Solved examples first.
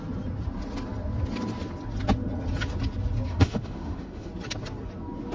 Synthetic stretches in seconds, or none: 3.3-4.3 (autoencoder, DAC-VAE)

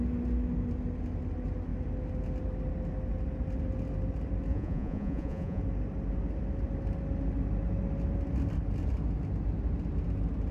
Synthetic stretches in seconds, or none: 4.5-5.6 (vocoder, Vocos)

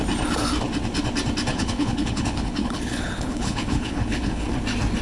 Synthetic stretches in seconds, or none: 1.5-4.5 (codec, HILCodec)

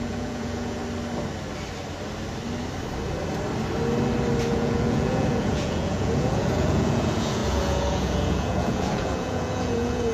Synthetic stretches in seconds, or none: 0.0-0.8 (vocoder, Vocos); 4.5-10.1

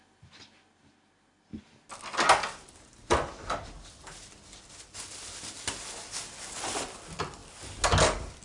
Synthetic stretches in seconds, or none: none

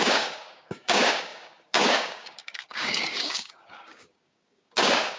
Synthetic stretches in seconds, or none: 0.0-5.2 (codec, DAC)

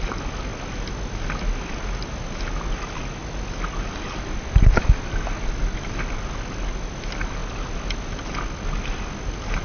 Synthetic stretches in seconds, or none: none

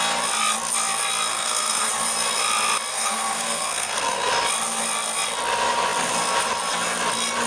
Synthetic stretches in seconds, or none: 1.3-1.9 (codec, SNAC); 2.9-4.3